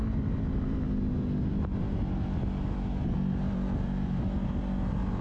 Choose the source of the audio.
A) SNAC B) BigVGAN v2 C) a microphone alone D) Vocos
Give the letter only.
C